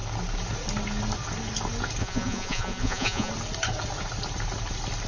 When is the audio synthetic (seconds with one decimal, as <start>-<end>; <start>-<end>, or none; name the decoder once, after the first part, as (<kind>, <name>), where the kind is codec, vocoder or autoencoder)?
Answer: 2.0-3.3 (vocoder, Vocos)